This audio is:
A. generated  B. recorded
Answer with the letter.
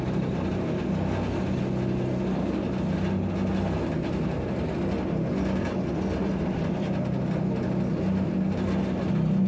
B